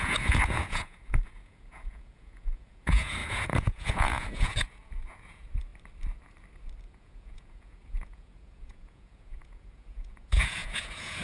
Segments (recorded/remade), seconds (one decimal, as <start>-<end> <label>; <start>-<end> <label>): 0.0-5.7 remade; 5.7-6.8 recorded; 6.8-11.2 remade